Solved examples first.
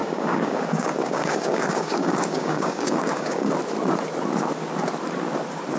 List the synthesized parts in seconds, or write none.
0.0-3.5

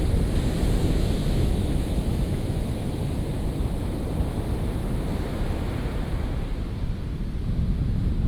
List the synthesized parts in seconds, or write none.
1.2-3.1

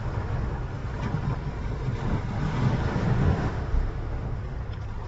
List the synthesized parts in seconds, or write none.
3.0-4.4

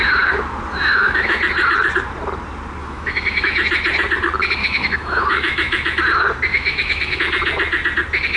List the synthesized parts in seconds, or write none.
0.9-1.4; 2.8-3.7; 4.6-6.0; 6.5-7.2